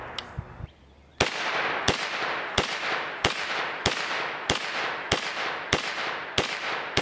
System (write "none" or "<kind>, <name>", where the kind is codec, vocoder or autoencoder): none